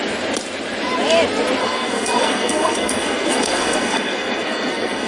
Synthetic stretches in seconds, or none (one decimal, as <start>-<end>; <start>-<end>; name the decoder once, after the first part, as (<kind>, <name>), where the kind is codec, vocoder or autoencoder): 1.6-5.1 (codec, SNAC)